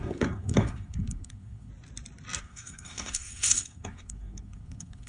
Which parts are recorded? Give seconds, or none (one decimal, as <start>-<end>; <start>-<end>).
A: 1.7-2.4